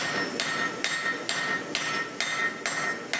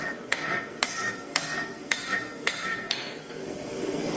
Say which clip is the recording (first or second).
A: first